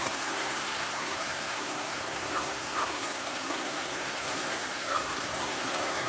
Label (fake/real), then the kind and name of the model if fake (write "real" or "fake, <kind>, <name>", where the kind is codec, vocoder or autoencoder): fake, codec, SNAC